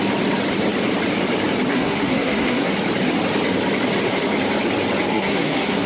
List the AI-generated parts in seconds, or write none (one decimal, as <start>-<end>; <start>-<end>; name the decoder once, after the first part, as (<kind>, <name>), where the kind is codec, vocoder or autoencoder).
1.7-2.7 (codec, SNAC); 5.1-5.9